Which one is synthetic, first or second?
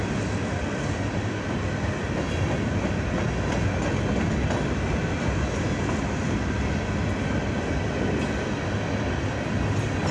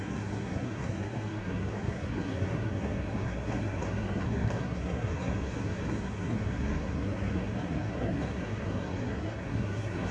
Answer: second